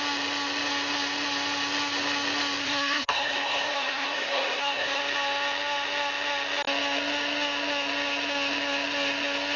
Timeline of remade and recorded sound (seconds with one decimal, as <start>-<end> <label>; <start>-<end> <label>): 0.0-2.6 recorded; 2.6-5.0 remade; 5.0-9.6 recorded